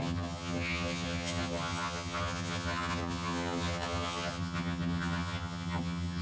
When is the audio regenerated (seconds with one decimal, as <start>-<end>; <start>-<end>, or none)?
0.0-6.2